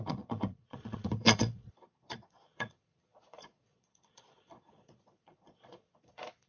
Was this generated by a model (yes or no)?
yes